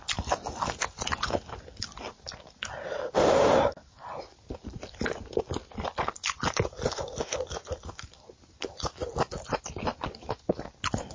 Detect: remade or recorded recorded